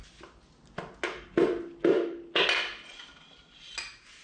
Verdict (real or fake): real